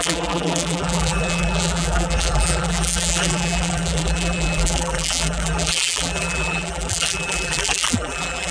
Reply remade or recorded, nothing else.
remade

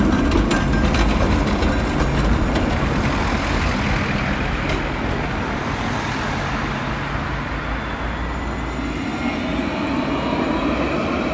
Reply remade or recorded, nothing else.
recorded